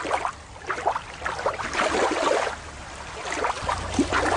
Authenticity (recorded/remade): recorded